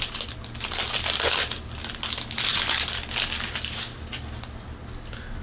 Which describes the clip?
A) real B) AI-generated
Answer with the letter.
A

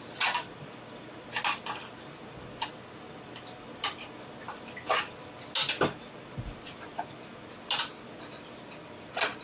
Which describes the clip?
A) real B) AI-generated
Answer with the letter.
A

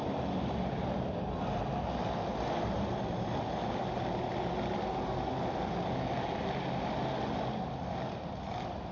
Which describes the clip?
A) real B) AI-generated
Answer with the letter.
A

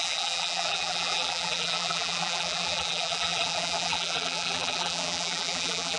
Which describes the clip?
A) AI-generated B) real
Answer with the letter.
A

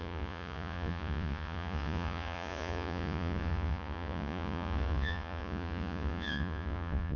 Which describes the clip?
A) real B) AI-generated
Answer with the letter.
B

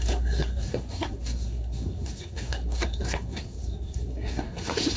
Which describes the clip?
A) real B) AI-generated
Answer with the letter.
B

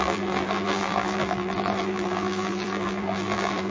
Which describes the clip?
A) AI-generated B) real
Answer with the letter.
A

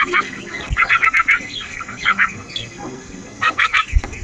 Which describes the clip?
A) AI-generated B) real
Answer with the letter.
A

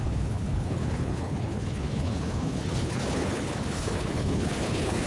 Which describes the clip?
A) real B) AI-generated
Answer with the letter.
B